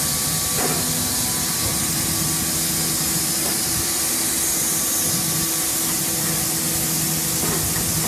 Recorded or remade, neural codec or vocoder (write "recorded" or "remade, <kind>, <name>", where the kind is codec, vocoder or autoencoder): recorded